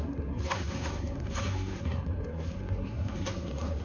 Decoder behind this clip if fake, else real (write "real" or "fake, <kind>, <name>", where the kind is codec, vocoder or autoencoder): fake, codec, SNAC